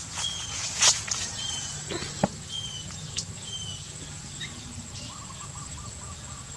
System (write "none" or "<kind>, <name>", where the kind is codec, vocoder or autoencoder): vocoder, Vocos